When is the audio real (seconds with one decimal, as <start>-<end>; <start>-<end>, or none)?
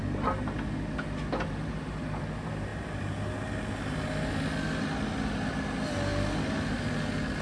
0.0-7.4